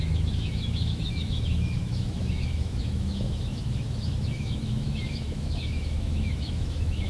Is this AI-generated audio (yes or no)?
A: yes